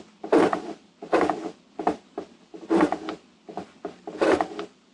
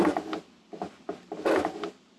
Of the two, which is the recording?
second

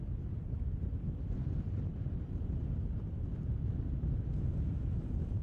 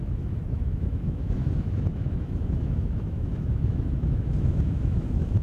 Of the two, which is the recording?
first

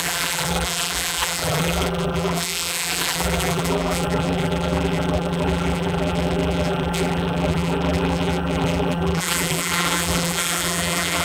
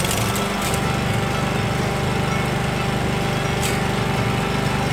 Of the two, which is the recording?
second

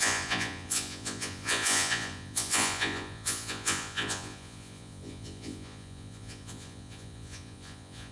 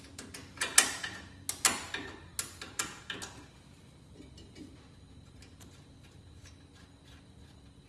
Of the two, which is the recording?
second